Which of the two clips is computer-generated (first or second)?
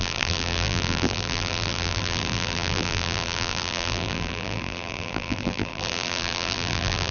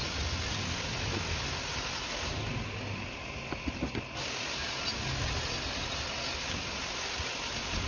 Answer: first